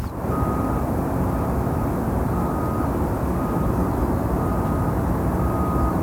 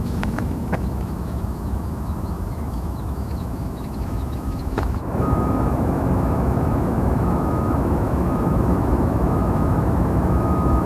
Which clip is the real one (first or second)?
first